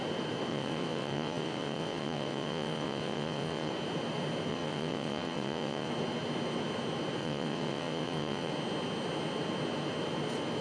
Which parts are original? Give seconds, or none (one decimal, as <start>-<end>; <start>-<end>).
0.0-0.5; 3.7-4.5; 5.9-7.2; 8.5-10.6